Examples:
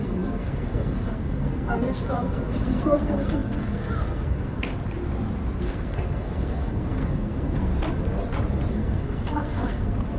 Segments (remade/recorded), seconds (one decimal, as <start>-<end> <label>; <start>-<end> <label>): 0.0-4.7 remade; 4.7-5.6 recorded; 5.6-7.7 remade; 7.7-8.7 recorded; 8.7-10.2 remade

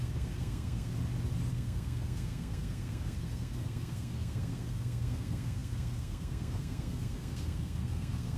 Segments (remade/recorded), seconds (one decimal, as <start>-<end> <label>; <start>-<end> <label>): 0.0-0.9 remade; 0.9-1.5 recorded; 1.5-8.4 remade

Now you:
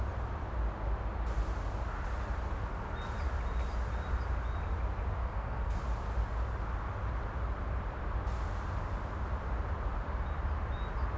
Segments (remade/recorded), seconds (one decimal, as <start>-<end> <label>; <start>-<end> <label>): 0.0-5.2 recorded; 5.2-5.8 remade; 5.8-11.2 recorded

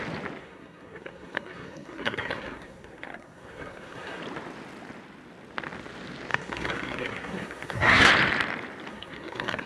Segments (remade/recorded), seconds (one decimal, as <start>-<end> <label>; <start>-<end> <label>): 0.0-0.4 recorded; 0.4-4.2 remade; 4.2-6.3 recorded; 6.3-8.1 remade; 8.1-8.9 recorded; 8.9-9.7 remade